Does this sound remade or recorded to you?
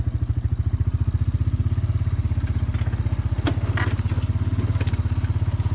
recorded